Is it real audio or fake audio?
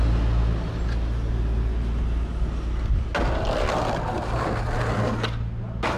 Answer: real